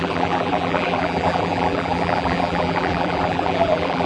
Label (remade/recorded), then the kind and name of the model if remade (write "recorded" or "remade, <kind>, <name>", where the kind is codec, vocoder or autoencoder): remade, vocoder, BigVGAN v2